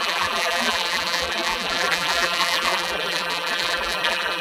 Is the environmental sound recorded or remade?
remade